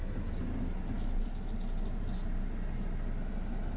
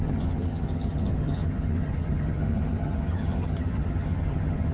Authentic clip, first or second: first